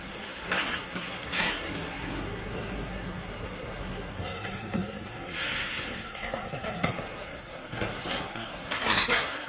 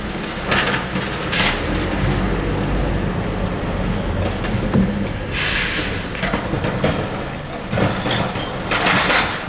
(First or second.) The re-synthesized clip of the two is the first